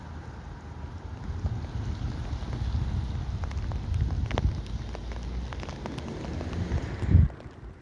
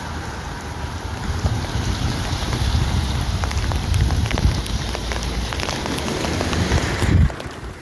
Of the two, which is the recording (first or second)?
first